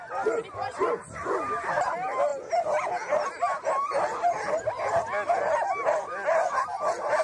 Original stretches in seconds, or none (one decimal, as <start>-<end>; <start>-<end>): 0.0-7.2